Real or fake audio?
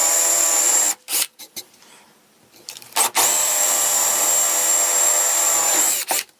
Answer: fake